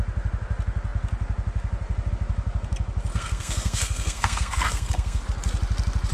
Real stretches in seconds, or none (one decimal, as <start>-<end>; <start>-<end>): 0.0-3.1; 5.2-6.1